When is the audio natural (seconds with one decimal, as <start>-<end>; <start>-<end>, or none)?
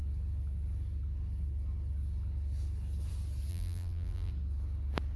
0.0-3.5; 4.3-5.2